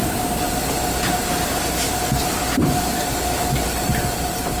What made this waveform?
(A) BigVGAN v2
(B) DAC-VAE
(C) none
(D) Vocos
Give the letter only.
C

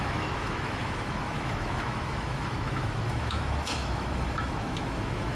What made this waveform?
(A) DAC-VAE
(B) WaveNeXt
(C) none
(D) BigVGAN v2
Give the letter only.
A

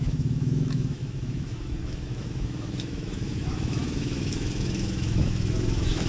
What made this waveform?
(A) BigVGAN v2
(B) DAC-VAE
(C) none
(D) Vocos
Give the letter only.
B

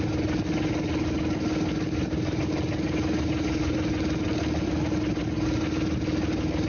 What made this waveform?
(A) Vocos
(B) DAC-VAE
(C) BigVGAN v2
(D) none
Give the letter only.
D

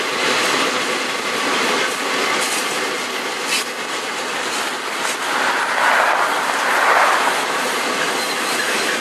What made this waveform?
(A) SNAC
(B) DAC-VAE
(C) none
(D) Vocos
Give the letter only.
C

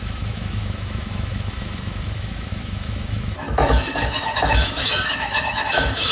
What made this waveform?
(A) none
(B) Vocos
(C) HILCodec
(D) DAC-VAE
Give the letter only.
D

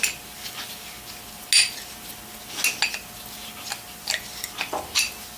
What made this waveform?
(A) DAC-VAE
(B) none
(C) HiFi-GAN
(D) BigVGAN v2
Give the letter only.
B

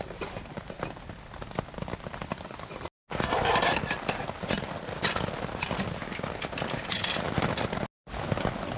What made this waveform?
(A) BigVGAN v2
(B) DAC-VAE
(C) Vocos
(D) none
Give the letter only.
D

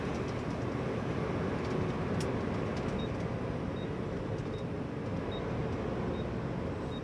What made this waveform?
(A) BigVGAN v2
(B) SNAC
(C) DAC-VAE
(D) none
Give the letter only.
D